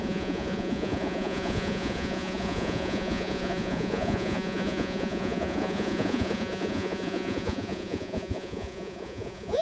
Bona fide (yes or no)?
no